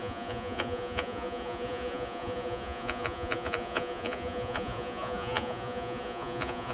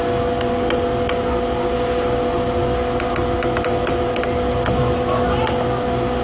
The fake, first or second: first